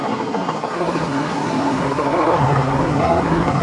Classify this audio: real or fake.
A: fake